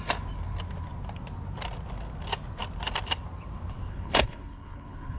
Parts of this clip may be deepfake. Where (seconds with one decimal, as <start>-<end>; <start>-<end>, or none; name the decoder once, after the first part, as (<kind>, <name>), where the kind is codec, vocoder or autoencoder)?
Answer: 3.9-5.2 (codec, HILCodec)